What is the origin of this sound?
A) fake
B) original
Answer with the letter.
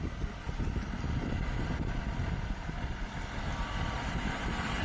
A